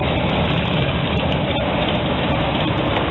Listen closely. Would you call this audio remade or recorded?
recorded